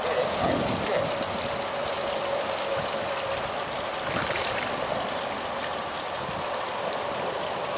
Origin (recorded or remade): recorded